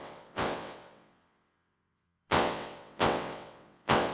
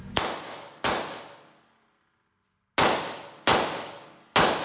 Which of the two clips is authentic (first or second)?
second